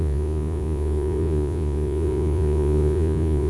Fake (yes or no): yes